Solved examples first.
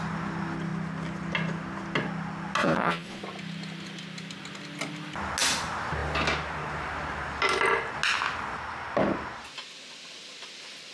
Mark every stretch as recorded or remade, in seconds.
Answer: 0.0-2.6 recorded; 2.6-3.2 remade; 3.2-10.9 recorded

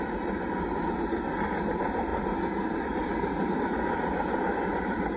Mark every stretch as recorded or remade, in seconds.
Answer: 0.0-5.2 recorded

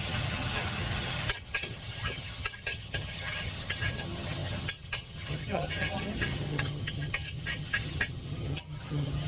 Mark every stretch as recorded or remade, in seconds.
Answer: 0.0-9.3 remade

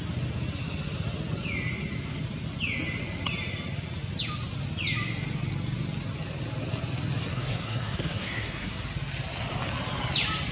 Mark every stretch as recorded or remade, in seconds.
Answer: 0.0-7.3 recorded; 7.3-8.8 remade; 8.8-10.5 recorded

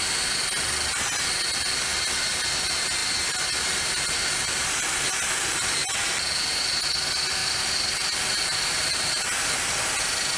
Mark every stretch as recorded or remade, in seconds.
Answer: 0.0-7.4 recorded; 7.4-9.2 remade; 9.2-10.4 recorded